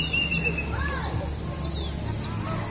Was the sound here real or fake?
real